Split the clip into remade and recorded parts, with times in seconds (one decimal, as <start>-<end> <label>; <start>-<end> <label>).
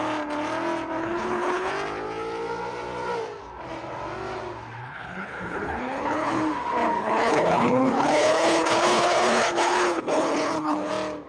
0.0-1.0 recorded; 1.0-1.7 remade; 1.7-4.8 recorded; 4.8-6.4 remade; 6.4-7.0 recorded; 7.0-10.9 remade; 10.9-11.3 recorded